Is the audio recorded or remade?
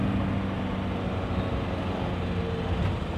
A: recorded